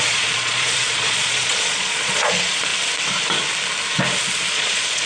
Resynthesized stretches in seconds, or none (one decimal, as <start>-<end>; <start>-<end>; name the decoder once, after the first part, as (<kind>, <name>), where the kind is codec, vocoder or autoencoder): 0.0-2.7 (vocoder, Vocos); 4.5-5.1